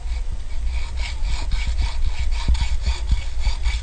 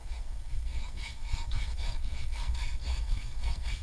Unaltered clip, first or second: first